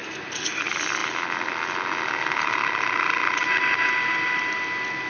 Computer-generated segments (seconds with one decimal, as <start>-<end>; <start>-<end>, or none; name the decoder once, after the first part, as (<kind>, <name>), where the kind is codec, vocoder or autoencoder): none